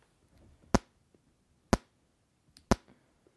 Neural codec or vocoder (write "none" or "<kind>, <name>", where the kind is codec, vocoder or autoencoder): none